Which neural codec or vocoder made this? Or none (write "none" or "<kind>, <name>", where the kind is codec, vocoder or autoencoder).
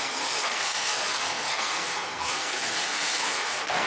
codec, SNAC